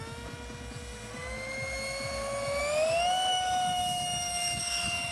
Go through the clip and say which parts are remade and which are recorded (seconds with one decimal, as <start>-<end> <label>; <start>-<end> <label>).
0.0-3.3 recorded; 3.3-4.6 remade; 4.6-5.1 recorded